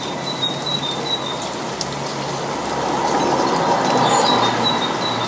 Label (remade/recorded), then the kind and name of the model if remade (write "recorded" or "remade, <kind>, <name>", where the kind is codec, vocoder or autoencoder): recorded